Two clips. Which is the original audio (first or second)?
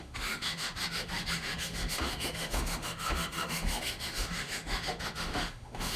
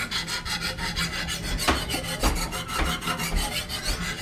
second